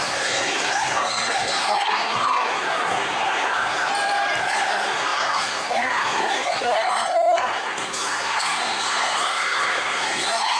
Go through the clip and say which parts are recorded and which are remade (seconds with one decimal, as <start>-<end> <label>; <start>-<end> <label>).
0.0-3.9 remade; 3.9-4.4 recorded; 4.4-10.6 remade